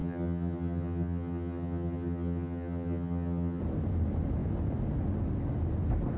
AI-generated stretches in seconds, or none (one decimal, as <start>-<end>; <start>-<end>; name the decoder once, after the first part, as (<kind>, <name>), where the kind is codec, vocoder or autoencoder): 0.0-3.6 (vocoder, HiFi-GAN)